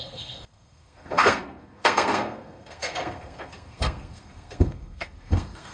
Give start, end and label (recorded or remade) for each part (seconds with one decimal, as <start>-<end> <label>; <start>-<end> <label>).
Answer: 0.0-5.7 remade